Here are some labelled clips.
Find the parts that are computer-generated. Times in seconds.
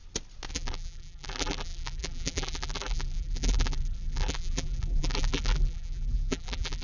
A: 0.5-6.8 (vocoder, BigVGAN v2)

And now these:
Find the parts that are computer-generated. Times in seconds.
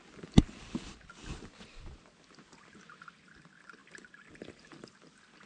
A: 3.8-4.8 (vocoder, BigVGAN v2)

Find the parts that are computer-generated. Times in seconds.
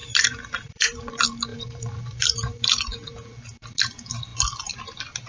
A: 0.0-1.1 (vocoder, BigVGAN v2); 1.5-2.8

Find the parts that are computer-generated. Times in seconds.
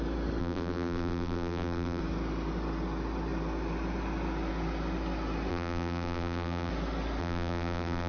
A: 0.4-2.0 (vocoder, BigVGAN v2); 5.5-6.7; 7.2-8.1